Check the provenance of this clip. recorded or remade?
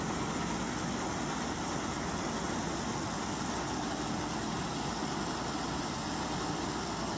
recorded